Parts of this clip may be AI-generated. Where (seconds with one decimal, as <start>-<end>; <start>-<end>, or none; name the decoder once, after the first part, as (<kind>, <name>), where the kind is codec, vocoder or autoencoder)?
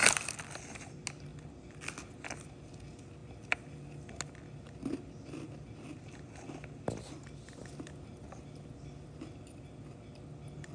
none